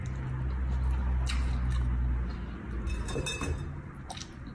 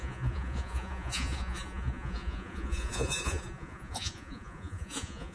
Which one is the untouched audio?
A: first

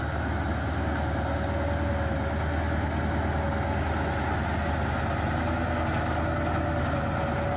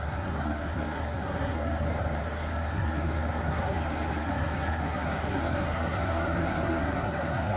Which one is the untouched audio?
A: first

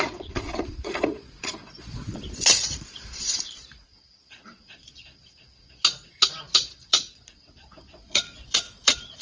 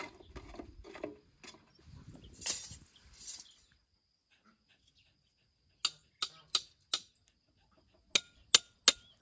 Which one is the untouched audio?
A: second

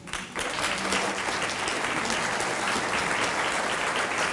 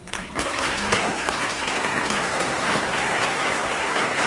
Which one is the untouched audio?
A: first